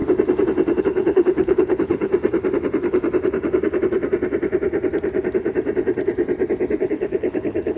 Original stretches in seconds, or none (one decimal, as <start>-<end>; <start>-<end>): 0.0-0.8; 2.1-6.8